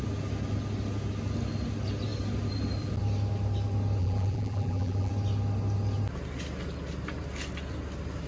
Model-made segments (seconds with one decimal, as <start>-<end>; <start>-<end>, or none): 4.0-5.1